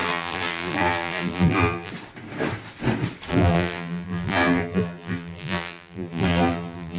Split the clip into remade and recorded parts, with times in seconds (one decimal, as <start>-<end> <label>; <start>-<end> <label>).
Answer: 0.0-1.9 remade; 1.9-3.3 recorded; 3.3-7.0 remade